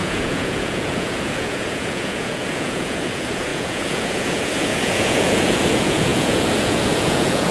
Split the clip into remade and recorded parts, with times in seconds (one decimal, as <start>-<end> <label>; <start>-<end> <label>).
0.0-7.5 remade